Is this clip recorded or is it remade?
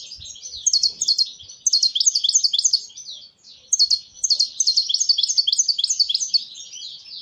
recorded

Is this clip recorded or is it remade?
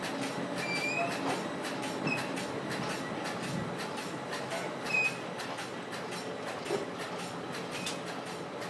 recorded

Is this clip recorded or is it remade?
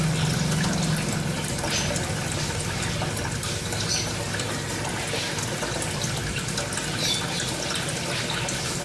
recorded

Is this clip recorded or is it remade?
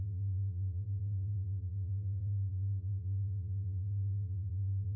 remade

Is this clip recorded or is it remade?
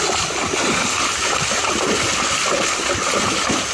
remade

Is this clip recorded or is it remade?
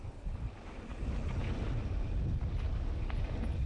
recorded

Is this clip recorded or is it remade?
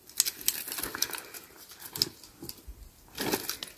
recorded